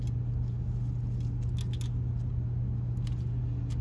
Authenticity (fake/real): real